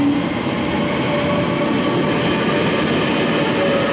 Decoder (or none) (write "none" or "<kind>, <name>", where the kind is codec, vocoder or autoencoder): none